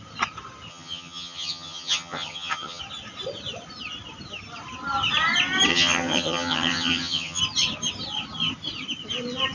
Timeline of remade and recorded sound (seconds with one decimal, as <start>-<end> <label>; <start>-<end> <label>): 0.0-0.7 recorded; 0.7-2.8 remade; 2.8-5.7 recorded; 5.7-7.4 remade; 7.4-9.5 recorded